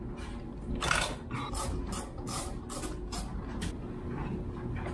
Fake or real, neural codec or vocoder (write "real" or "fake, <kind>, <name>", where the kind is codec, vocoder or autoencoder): real